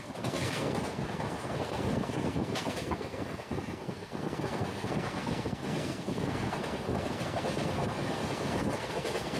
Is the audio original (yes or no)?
no